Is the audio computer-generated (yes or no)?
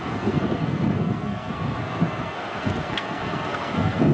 yes